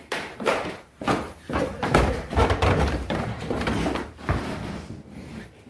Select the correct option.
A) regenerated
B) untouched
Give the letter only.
A